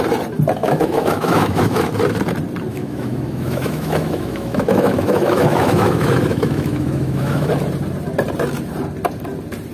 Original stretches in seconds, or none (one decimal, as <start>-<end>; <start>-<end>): 0.0-0.6; 1.9-2.7; 7.5-9.7

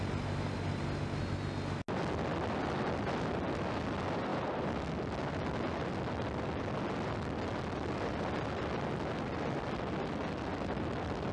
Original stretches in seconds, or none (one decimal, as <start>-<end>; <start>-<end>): 0.0-11.3

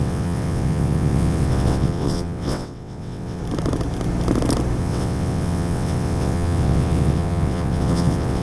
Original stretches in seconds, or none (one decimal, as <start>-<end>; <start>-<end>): 3.4-4.8

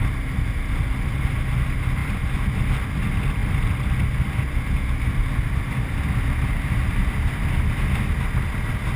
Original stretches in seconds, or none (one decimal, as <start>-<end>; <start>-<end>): 0.0-9.0

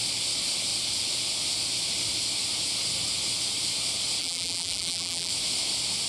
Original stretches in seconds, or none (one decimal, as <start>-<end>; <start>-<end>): 0.0-4.2; 5.3-6.1

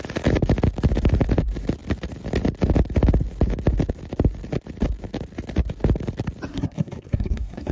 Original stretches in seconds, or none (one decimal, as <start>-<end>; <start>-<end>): 0.0-6.5

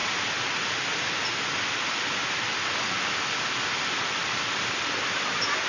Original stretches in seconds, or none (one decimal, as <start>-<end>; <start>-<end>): 0.0-5.7